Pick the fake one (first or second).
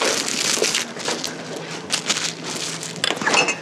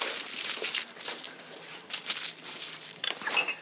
second